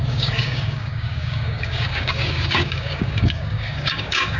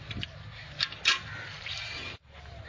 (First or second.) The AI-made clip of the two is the first